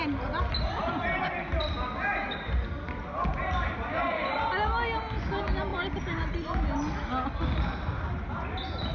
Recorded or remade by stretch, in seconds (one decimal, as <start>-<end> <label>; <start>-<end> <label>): 0.0-8.9 recorded